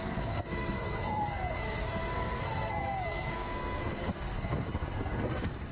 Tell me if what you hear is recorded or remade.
remade